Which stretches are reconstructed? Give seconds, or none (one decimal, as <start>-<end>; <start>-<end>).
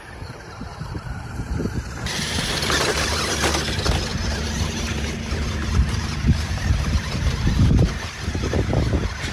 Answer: 0.7-3.2; 4.1-8.7